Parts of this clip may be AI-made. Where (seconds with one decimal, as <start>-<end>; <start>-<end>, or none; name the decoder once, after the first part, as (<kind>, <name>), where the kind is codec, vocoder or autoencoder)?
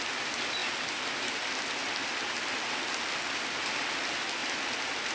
none